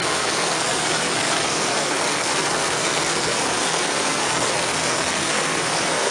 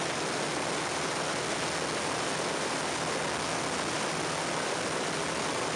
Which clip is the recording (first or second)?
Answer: second